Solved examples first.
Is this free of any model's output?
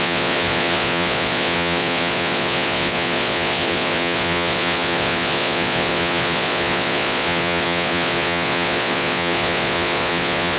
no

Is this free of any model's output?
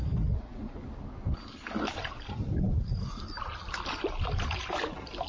yes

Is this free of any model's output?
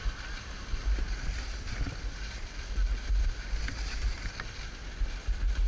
yes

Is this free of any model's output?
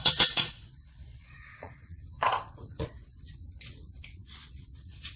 no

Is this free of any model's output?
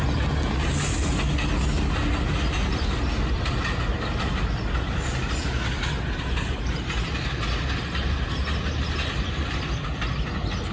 yes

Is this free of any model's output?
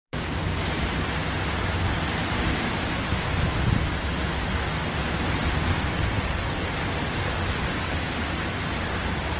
yes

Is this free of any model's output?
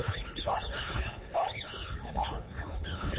no